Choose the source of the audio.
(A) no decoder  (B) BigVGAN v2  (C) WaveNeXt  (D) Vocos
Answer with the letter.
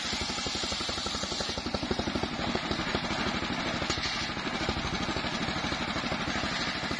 A